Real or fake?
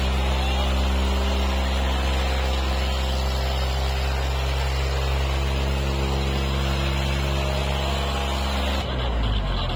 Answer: real